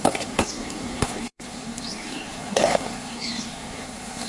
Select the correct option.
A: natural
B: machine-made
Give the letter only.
B